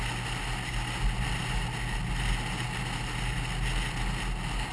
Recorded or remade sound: recorded